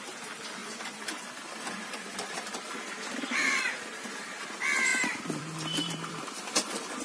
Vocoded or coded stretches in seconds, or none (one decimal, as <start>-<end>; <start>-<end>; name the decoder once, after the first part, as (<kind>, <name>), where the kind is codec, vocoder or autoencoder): 0.6-3.6 (vocoder, BigVGAN v2); 4.9-6.1